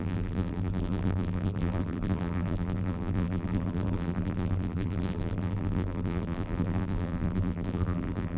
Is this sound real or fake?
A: fake